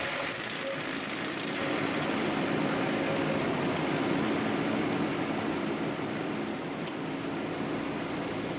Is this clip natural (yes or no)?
yes